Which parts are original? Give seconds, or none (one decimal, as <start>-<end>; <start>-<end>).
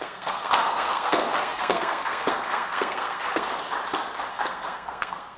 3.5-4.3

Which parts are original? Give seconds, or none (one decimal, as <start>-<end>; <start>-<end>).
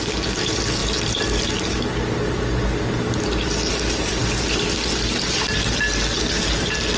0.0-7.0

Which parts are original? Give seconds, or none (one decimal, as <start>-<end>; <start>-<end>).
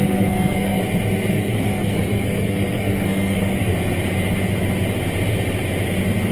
0.8-1.3; 3.7-6.3